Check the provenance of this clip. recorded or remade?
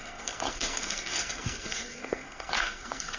remade